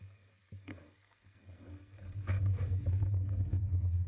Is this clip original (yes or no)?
no